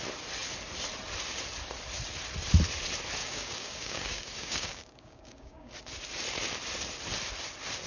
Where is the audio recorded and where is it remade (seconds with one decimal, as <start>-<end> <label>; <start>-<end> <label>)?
0.0-3.2 recorded; 3.2-5.7 remade; 5.7-7.9 recorded